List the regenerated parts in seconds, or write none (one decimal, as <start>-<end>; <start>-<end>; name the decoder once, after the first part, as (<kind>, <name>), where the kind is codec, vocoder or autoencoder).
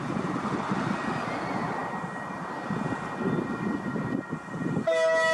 none